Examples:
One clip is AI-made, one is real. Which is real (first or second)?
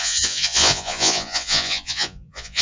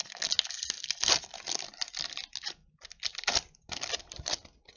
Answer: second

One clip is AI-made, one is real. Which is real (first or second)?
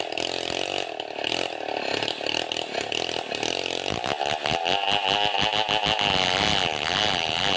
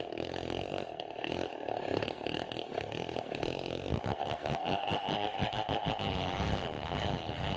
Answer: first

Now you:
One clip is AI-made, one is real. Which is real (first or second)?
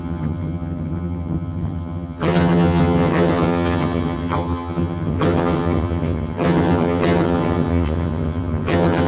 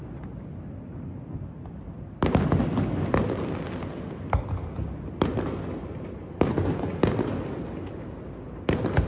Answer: second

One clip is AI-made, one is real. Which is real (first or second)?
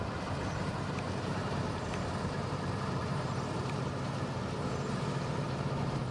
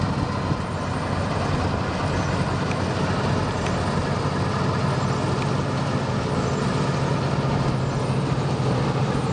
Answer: second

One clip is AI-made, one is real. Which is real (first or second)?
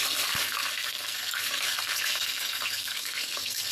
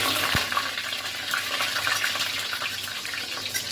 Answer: second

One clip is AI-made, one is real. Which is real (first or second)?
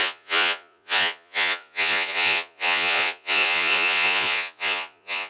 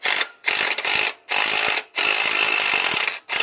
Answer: second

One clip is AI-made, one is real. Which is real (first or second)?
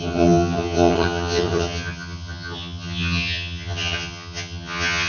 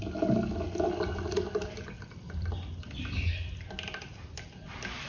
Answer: second